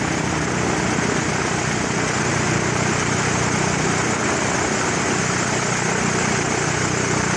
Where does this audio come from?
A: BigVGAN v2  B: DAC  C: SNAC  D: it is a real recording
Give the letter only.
D